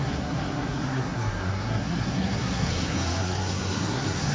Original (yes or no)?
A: no